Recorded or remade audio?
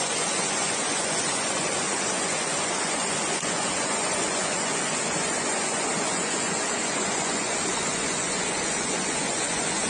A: remade